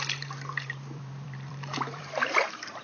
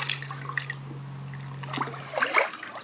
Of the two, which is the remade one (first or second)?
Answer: first